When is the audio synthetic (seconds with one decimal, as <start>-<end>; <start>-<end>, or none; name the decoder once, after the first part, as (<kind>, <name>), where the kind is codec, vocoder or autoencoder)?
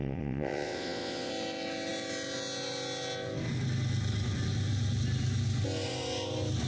0.0-1.3 (vocoder, WaveNeXt)